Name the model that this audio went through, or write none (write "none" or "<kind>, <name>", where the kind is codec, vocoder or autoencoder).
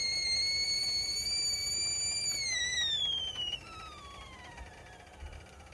none